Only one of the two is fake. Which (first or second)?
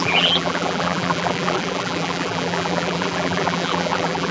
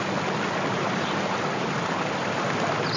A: first